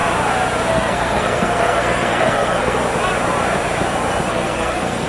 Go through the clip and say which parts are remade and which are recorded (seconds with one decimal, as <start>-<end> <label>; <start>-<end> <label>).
0.0-0.7 recorded; 0.7-2.8 remade; 2.8-4.3 recorded; 4.3-5.1 remade